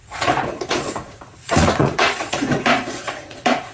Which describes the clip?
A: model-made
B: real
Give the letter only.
A